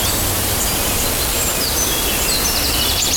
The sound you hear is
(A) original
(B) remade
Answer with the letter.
A